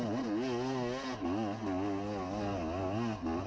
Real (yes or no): yes